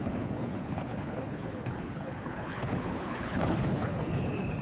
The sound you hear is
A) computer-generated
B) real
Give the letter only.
A